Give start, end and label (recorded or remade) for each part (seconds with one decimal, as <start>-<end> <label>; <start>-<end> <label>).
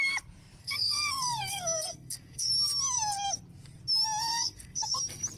0.0-0.6 recorded; 0.6-2.5 remade; 2.5-4.2 recorded; 4.2-5.0 remade; 5.0-5.4 recorded